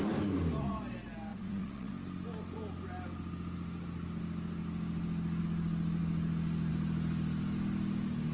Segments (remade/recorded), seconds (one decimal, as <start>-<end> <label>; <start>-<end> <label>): 0.0-1.3 recorded; 1.3-1.9 remade; 1.9-8.3 recorded